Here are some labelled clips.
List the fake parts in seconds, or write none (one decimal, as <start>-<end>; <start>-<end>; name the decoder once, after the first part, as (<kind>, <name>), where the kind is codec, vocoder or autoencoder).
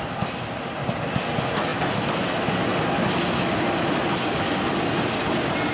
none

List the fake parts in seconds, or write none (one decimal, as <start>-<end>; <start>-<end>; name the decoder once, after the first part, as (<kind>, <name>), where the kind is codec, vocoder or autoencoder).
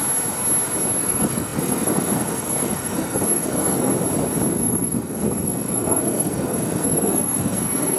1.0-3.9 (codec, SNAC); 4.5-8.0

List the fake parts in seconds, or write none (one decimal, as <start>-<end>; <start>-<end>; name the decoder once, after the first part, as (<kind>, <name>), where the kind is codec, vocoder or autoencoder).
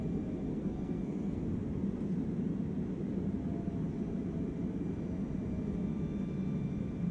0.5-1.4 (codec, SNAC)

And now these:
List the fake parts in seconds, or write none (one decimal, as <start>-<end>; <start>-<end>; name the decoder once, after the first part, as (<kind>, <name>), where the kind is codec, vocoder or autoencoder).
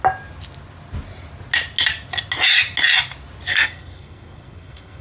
3.5-5.0 (codec, SNAC)